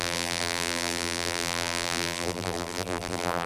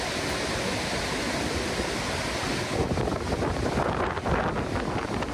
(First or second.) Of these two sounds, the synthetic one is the first